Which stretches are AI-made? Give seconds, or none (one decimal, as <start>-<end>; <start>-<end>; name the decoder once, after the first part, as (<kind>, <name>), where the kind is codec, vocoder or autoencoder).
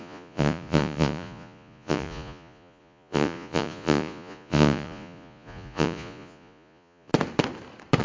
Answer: 0.0-7.1 (vocoder, Vocos)